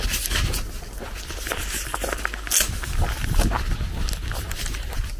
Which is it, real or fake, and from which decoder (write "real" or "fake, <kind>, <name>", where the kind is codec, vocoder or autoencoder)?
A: real